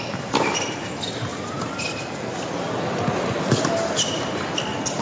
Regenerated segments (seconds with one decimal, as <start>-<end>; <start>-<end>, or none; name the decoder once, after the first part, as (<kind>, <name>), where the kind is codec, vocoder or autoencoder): none